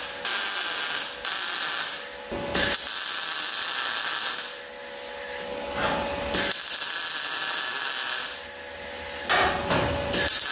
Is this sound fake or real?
real